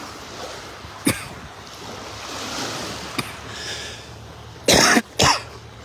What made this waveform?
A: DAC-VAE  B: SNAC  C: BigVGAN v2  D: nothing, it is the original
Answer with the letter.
D